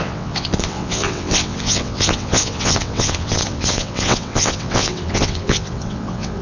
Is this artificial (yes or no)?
yes